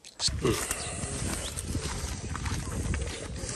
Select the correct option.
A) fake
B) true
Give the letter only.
B